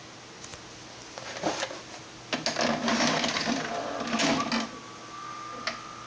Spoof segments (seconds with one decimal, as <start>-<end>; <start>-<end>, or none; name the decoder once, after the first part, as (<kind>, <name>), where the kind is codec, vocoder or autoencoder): none